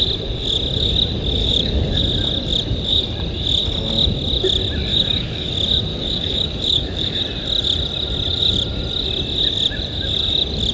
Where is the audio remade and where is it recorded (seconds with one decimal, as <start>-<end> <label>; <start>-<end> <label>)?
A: 0.0-1.4 recorded; 1.4-2.0 remade; 2.0-4.9 recorded; 4.9-5.5 remade; 5.5-5.9 recorded; 5.9-7.2 remade; 7.2-10.7 recorded

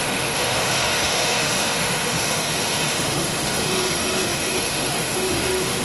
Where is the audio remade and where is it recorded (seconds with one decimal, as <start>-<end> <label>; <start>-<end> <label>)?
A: 0.0-5.8 remade

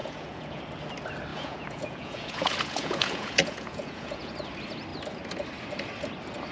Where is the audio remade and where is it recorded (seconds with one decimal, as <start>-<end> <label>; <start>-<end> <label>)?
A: 0.0-0.6 remade; 0.6-1.3 recorded; 1.3-4.3 remade; 4.3-6.5 recorded

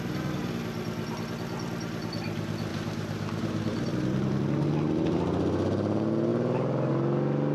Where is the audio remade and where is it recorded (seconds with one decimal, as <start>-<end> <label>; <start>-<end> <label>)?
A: 0.0-2.7 recorded; 2.7-3.9 remade; 3.9-7.5 recorded

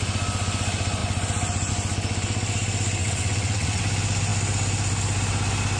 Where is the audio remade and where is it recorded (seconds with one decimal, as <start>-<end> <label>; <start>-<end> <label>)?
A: 0.0-3.0 recorded; 3.0-3.8 remade; 3.8-5.8 recorded

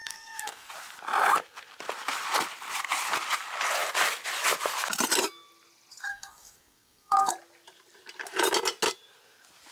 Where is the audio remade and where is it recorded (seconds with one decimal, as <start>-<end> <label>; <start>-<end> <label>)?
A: 0.0-0.7 remade; 0.7-6.1 recorded; 6.1-7.3 remade; 7.3-9.7 recorded

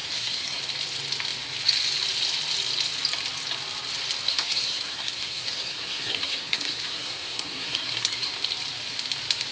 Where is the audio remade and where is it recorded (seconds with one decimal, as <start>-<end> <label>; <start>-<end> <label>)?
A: 0.0-0.6 remade; 0.6-4.3 recorded; 4.3-8.3 remade; 8.3-9.5 recorded